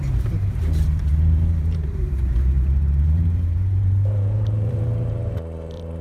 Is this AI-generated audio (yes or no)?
yes